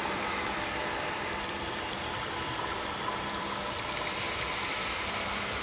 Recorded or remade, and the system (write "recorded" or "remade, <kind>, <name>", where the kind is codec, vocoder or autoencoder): remade, vocoder, BigVGAN v2